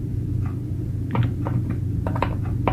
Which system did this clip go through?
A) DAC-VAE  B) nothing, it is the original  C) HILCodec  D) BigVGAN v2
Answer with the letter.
B